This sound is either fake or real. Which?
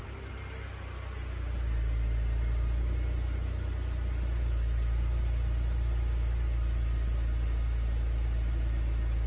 real